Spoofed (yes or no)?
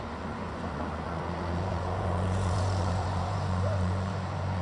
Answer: yes